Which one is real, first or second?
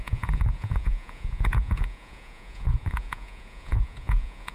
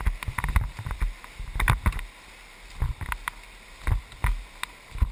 second